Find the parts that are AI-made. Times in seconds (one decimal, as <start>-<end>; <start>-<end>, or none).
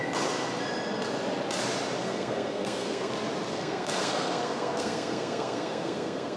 2.0-3.1; 3.5-6.4